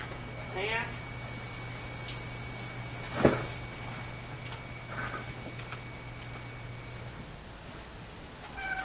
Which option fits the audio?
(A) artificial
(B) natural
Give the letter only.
B